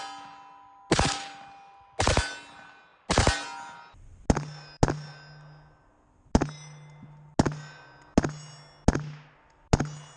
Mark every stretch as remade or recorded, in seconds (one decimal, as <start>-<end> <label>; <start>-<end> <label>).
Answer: 0.0-10.2 recorded